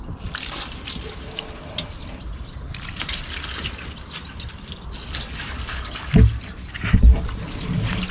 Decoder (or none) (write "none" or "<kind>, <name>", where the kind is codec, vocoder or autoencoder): none